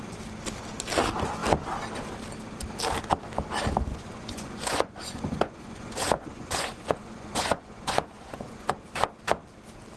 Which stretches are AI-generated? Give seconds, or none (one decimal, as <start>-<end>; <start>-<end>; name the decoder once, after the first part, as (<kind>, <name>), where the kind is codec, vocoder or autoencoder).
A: 3.9-8.7 (vocoder, Vocos)